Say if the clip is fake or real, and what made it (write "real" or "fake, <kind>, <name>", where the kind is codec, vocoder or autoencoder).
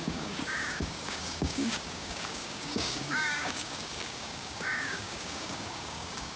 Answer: fake, codec, DAC